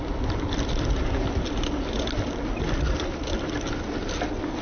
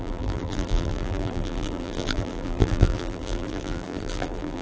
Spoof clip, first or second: second